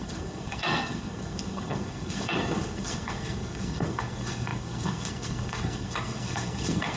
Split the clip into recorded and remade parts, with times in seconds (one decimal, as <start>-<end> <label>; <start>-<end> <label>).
0.0-7.0 remade